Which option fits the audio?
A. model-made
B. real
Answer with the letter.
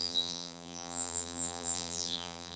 A